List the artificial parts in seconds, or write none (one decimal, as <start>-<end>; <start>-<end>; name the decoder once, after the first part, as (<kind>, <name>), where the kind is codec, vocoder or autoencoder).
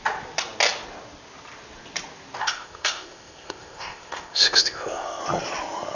2.4-5.2 (codec, ZipCodec)